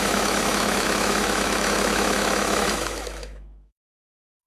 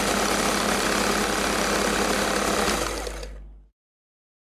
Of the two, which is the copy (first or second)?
first